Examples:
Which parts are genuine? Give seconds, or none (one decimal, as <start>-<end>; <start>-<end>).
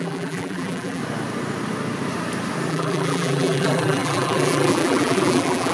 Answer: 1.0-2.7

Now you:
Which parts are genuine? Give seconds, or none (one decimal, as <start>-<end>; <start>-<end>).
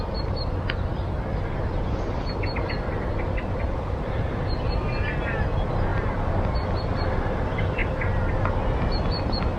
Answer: 0.0-0.9; 4.2-5.9; 6.8-7.8; 8.4-9.6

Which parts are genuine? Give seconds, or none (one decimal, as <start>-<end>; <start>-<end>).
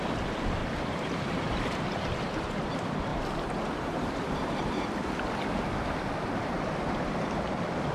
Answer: 0.0-0.6; 1.3-3.1; 5.1-7.9